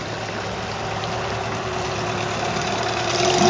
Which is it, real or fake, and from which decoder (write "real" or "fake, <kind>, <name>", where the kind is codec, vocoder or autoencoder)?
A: real